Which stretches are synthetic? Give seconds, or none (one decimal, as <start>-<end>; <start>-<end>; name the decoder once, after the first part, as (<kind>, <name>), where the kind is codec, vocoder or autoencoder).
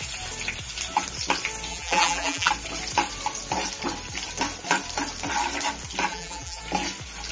1.7-2.5 (vocoder, BigVGAN v2); 6.1-6.6